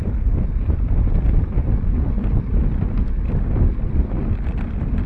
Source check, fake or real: real